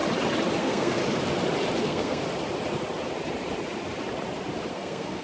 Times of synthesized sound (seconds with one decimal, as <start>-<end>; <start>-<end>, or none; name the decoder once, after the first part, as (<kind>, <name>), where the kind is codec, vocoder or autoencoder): 0.6-1.0 (codec, SNAC); 1.8-2.2; 4.7-5.2